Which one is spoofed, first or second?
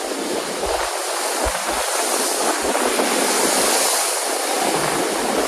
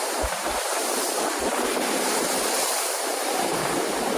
second